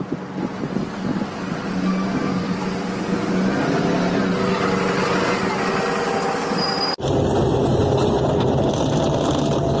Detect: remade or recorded recorded